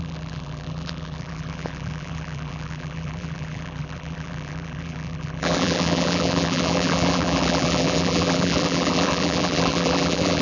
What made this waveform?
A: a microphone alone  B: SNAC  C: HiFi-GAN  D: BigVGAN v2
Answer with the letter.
D